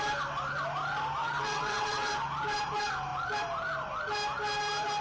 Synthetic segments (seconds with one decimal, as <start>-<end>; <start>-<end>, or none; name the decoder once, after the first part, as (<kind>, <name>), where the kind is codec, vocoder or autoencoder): 1.2-2.1 (vocoder, WaveNeXt)